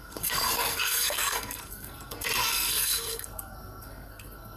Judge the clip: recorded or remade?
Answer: remade